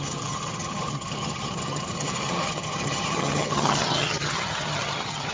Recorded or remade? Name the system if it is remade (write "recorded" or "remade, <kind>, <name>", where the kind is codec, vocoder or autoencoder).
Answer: remade, vocoder, HiFi-GAN